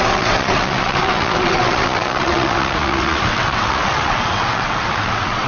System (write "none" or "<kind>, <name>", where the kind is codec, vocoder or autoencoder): vocoder, WaveNeXt